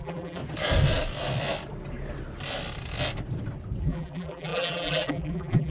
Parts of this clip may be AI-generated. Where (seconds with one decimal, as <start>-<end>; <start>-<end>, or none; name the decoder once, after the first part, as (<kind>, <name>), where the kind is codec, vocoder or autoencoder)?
0.0-0.4 (vocoder, BigVGAN v2); 3.8-5.7